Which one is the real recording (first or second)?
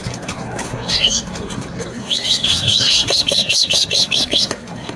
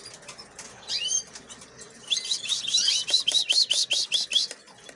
second